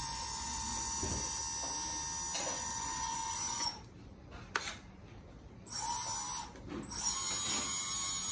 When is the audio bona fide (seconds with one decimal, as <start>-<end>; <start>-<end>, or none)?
1.4-2.4; 3.7-8.3